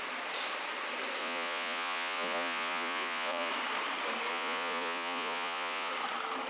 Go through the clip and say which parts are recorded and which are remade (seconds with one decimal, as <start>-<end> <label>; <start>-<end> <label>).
0.0-1.2 recorded; 1.2-3.5 remade; 3.5-4.3 recorded; 4.3-5.9 remade; 5.9-6.5 recorded